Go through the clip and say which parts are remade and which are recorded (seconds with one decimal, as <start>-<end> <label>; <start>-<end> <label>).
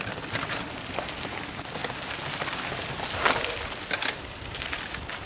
0.0-5.3 recorded